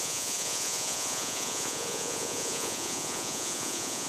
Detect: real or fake fake